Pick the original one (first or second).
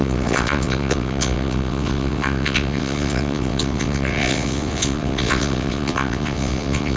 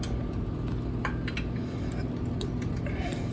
second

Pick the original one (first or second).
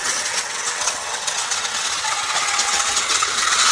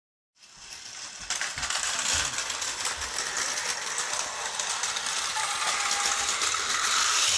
second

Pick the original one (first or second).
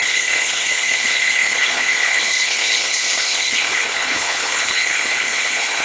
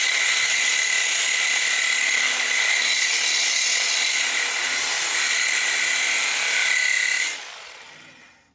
second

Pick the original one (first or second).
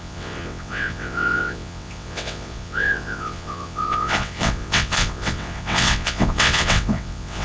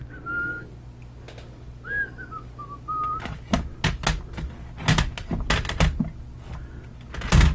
second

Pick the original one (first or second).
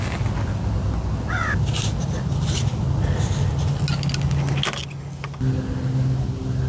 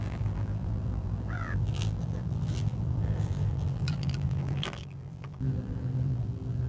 first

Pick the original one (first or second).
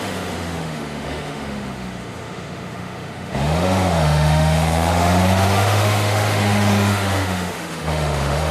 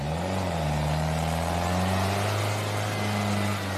second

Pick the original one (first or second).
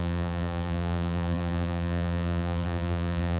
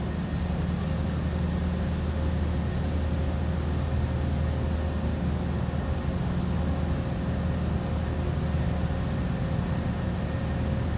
second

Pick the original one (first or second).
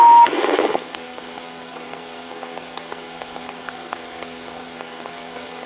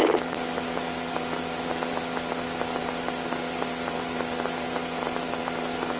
second